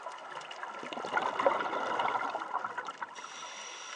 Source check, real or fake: real